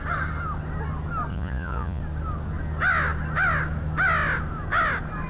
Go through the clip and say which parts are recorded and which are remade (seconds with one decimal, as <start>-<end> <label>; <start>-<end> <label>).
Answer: 0.0-1.3 recorded; 1.3-2.0 remade; 2.0-5.3 recorded